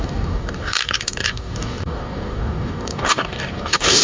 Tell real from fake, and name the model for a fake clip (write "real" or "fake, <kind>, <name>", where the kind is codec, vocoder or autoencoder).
fake, codec, DAC